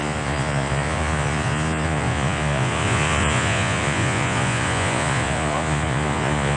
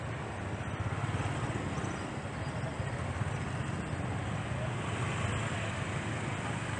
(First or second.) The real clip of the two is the second